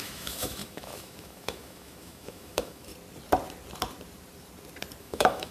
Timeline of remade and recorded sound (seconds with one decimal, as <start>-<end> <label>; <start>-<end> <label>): 0.0-2.9 remade; 2.9-5.0 recorded; 5.0-5.5 remade